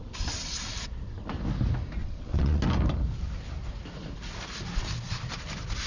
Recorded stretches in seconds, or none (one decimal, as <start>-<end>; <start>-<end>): 0.0-2.0; 2.6-5.9